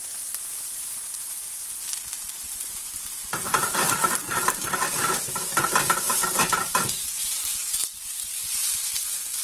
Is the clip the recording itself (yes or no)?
no